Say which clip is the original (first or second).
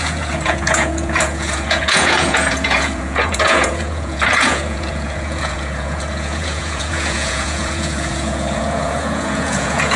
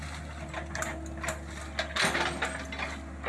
second